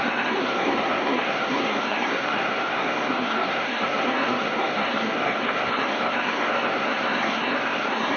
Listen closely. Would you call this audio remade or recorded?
remade